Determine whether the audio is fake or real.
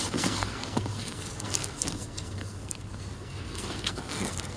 fake